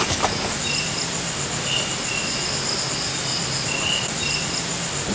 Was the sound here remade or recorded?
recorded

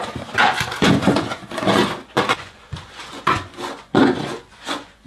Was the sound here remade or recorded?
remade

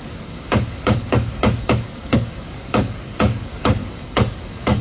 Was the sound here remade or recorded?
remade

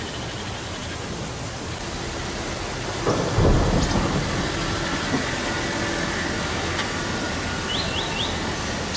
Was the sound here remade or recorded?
recorded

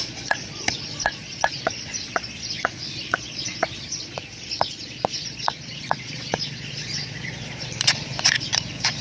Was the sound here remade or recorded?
remade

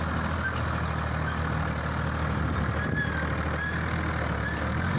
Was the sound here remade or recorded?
recorded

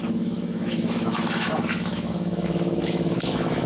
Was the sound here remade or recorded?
remade